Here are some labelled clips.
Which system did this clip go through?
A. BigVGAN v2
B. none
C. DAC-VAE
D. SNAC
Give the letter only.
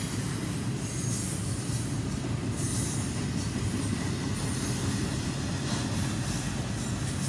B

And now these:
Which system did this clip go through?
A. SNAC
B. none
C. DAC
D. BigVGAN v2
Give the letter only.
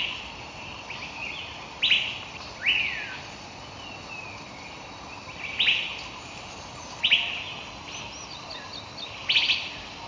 B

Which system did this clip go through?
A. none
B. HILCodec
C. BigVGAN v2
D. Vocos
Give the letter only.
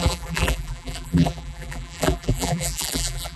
C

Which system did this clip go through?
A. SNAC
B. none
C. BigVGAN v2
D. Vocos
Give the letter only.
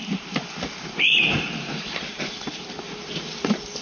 C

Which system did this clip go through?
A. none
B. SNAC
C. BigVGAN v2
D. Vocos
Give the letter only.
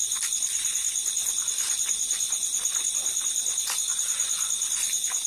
A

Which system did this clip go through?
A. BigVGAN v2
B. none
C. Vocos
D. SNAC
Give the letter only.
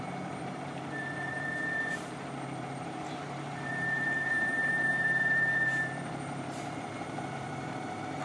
A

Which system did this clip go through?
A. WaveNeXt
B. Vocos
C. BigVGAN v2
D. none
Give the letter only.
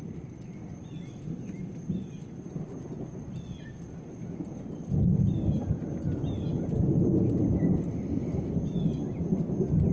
D